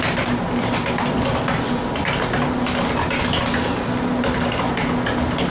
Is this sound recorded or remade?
recorded